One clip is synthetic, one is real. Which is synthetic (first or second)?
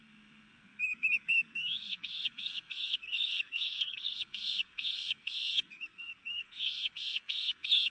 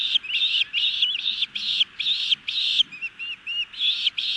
first